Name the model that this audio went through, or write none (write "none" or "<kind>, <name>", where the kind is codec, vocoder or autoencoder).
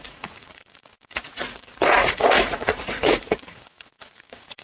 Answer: vocoder, Vocos